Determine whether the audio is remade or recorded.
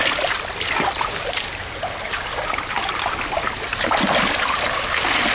recorded